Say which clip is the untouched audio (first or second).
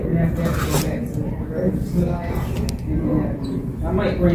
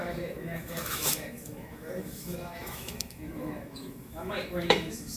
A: first